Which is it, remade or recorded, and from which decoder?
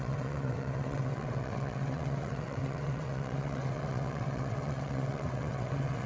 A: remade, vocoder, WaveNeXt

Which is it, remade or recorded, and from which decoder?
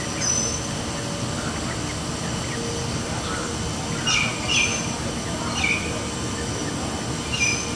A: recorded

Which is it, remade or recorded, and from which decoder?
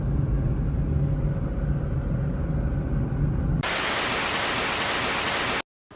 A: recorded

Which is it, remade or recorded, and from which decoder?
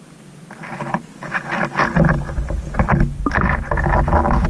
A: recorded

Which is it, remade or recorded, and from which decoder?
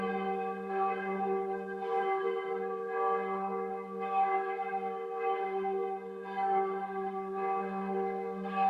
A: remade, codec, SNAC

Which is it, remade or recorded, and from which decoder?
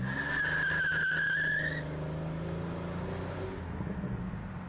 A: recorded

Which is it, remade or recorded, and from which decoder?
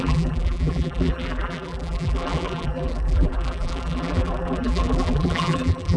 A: remade, vocoder, BigVGAN v2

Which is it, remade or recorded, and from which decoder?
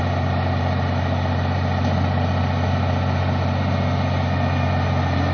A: recorded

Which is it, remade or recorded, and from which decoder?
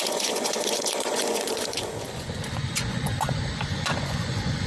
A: remade, vocoder, Vocos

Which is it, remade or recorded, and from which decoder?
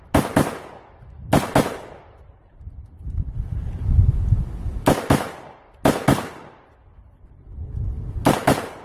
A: recorded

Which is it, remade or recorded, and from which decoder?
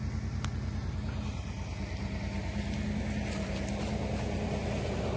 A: recorded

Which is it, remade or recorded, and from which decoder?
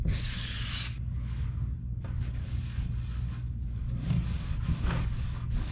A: remade, codec, DAC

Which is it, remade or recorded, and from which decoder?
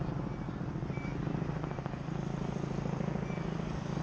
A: recorded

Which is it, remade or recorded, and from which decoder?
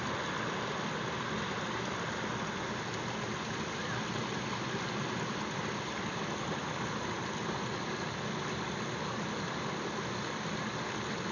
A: recorded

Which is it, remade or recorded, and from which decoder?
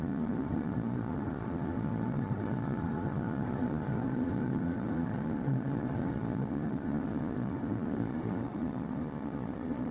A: remade, vocoder, Vocos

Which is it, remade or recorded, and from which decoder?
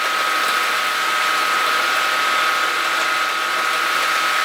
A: recorded